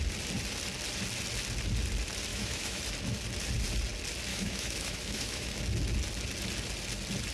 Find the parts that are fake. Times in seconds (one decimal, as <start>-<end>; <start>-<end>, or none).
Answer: 2.3-2.8; 4.3-5.5